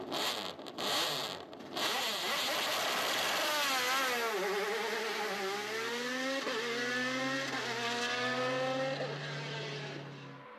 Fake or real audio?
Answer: real